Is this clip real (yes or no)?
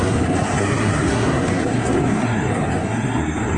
no